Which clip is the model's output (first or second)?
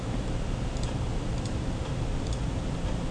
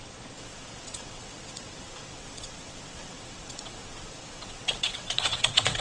second